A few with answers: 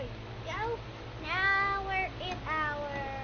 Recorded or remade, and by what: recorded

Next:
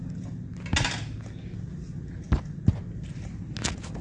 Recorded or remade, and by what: recorded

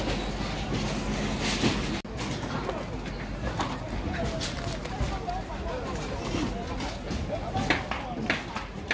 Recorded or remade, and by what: recorded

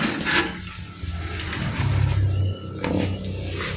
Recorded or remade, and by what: recorded